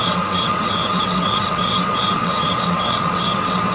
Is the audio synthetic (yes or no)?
yes